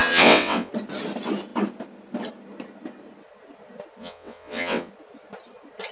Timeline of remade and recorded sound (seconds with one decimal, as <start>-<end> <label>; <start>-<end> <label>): 0.0-0.7 remade; 0.7-4.0 recorded; 4.0-4.9 remade; 4.9-5.9 recorded